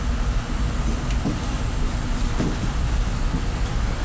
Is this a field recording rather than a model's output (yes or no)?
yes